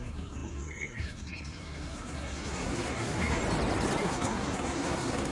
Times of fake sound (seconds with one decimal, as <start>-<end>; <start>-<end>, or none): 0.0-3.4; 4.0-5.3